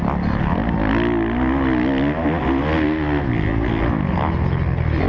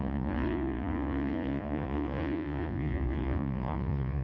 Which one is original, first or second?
first